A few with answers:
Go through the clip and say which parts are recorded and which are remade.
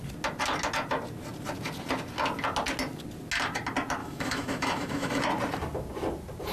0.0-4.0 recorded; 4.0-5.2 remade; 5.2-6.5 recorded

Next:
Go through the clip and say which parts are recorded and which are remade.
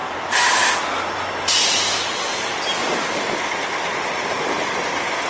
0.0-5.3 recorded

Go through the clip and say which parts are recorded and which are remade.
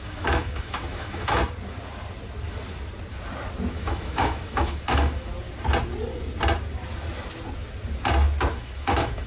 0.0-1.4 remade; 1.4-3.7 recorded; 3.7-5.3 remade; 5.3-8.5 recorded; 8.5-9.3 remade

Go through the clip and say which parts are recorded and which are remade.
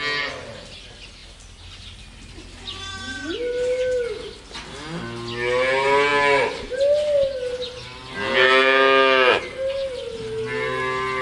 0.0-11.2 recorded